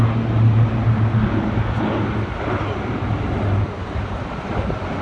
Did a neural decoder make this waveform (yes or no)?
no